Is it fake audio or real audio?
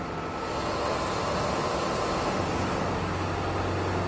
real